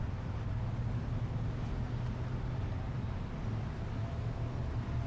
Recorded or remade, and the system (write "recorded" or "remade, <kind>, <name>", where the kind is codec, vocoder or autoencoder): recorded